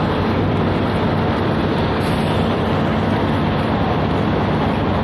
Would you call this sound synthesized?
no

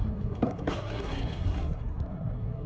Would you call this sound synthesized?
yes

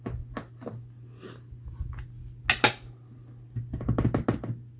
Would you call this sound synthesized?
no